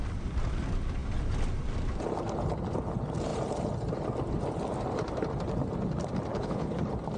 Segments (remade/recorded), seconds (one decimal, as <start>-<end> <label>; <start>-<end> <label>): 0.0-6.3 recorded; 6.3-6.8 remade; 6.8-7.2 recorded